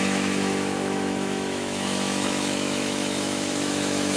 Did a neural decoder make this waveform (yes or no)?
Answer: yes